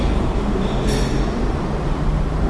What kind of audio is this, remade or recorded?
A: recorded